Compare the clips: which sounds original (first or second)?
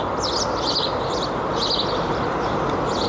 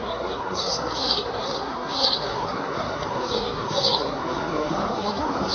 first